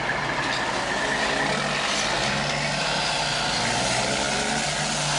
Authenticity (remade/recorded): recorded